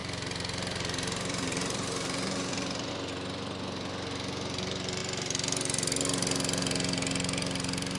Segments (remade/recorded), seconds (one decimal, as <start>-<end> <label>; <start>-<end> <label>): 0.0-2.9 remade; 2.9-8.0 recorded